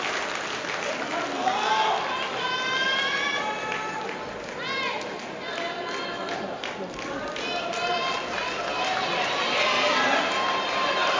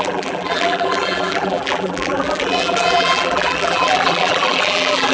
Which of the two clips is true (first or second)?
first